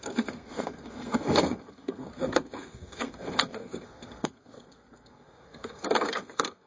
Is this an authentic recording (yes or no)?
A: no